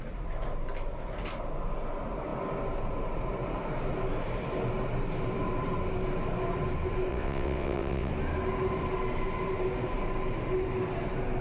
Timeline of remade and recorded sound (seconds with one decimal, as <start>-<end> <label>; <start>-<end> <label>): 0.0-7.1 recorded; 7.1-8.1 remade; 8.1-11.4 recorded